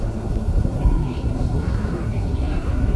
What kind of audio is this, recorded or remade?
remade